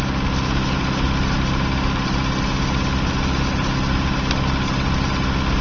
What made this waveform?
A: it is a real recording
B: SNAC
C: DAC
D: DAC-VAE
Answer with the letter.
A